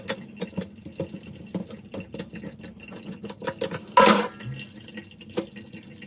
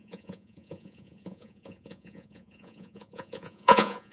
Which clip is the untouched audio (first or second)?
first